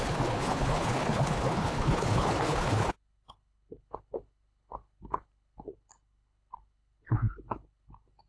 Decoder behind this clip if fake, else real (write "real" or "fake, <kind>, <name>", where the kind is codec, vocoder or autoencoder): fake, codec, HILCodec